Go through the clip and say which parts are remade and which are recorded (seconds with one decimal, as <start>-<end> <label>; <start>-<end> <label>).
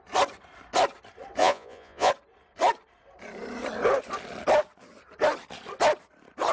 0.0-1.4 recorded; 1.4-2.1 remade; 2.1-6.5 recorded